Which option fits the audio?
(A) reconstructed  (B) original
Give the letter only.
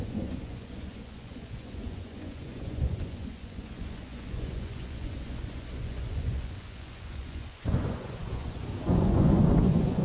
A